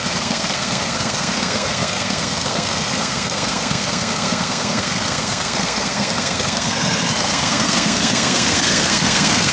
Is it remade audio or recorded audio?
remade